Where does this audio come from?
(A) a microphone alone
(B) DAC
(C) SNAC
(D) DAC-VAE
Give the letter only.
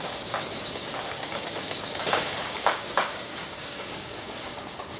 B